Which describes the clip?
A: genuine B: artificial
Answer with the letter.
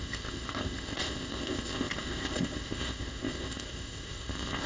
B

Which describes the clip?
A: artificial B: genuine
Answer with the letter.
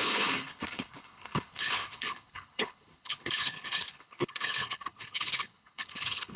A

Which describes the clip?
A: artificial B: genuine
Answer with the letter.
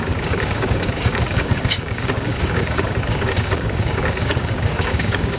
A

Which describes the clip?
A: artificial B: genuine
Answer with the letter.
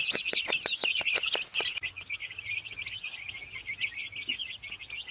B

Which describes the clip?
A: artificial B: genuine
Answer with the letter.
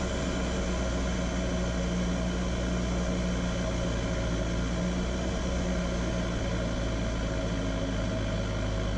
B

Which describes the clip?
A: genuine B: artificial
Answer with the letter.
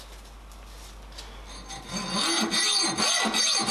A